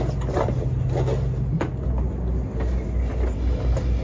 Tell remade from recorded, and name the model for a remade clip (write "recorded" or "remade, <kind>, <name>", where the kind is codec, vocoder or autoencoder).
recorded